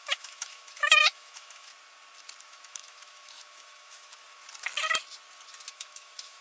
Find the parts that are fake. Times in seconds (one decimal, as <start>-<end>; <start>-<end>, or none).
0.0-1.7; 2.4-4.4; 5.7-6.4